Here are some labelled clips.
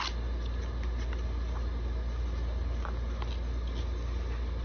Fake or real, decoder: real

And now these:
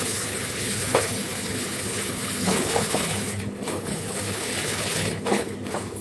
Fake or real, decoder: fake, codec, HILCodec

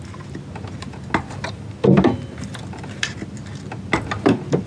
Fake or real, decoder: real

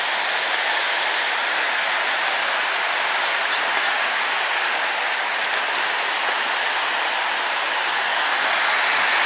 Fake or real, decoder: real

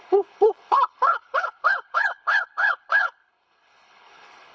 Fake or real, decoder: fake, codec, HILCodec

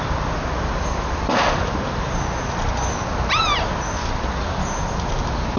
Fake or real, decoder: real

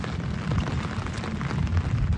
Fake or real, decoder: real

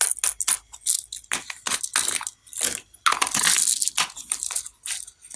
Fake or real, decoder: real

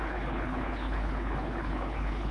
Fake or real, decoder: fake, codec, HILCodec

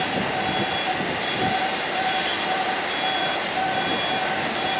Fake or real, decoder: real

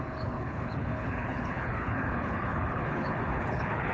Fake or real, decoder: fake, codec, HILCodec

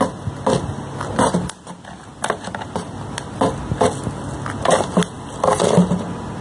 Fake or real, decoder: real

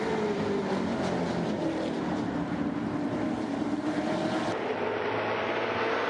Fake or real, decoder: real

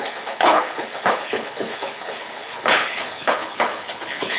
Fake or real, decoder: fake, codec, HILCodec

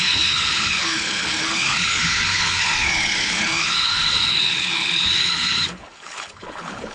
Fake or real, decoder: fake, codec, HILCodec